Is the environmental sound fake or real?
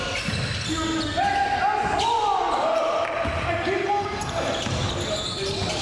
real